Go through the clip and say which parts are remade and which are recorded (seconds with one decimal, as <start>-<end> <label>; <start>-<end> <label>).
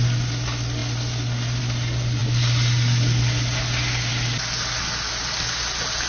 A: 0.0-6.1 recorded